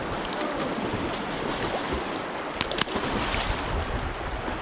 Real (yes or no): yes